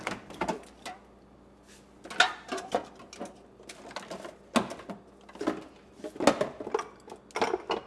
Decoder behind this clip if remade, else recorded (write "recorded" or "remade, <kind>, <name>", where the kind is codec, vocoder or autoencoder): recorded